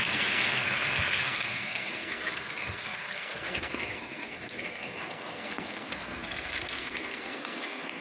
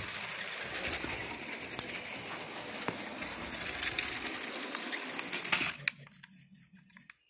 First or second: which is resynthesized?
first